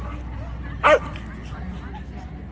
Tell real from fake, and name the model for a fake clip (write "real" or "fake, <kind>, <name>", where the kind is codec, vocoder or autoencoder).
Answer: real